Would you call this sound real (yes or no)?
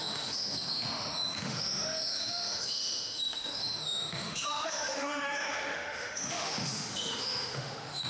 no